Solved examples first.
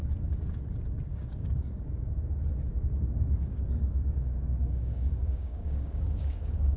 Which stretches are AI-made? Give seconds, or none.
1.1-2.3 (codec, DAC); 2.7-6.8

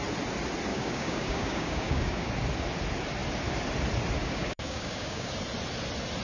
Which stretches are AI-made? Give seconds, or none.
0.7-2.3 (codec, DAC); 4.2-5.3